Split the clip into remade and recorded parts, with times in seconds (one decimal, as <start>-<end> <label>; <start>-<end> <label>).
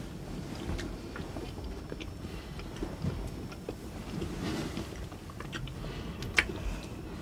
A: 0.0-7.2 recorded